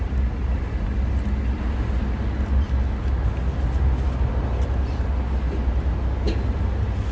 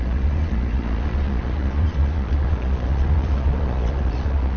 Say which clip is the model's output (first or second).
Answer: second